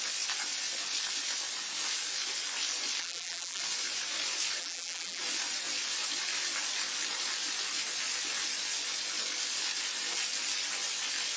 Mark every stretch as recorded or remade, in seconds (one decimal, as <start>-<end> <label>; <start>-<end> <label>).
0.0-3.0 recorded; 3.0-3.6 remade; 3.6-4.6 recorded; 4.6-5.2 remade; 5.2-11.4 recorded